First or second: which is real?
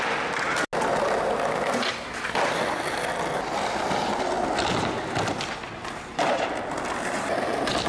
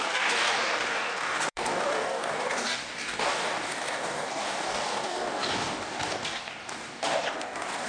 first